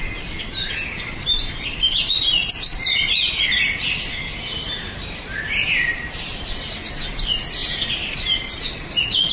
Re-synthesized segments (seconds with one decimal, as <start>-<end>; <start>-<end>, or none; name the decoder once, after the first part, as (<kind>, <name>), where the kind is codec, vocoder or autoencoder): 4.5-6.6 (vocoder, BigVGAN v2); 7.6-8.2

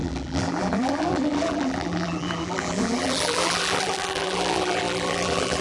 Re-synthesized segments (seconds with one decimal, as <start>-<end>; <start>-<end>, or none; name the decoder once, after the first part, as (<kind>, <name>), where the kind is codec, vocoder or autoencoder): 0.0-5.6 (vocoder, BigVGAN v2)

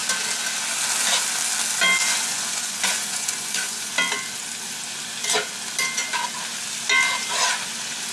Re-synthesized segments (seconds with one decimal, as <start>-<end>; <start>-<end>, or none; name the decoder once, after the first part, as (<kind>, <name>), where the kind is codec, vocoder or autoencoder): 2.0-3.9 (vocoder, Vocos)

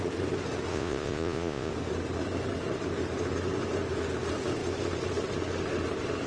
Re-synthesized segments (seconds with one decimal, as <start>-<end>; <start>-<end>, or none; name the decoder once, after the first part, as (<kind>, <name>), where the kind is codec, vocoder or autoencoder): 0.7-1.7 (vocoder, Vocos)

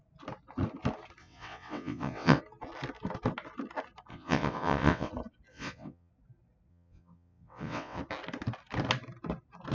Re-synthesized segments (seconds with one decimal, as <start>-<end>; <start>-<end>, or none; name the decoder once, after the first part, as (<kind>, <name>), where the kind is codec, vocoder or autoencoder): 1.2-2.4 (vocoder, WaveNeXt); 4.1-5.1; 5.5-6.1; 6.7-8.0

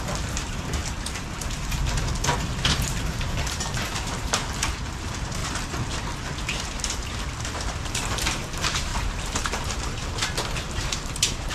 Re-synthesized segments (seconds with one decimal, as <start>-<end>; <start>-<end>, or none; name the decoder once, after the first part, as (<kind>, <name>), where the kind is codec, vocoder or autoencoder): 0.0-0.8 (vocoder, BigVGAN v2); 2.3-5.4; 7.4-11.5

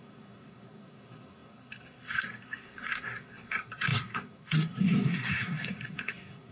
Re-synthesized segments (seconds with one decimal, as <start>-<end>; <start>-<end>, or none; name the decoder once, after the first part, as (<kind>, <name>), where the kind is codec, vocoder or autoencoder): 0.0-6.5 (codec, SNAC)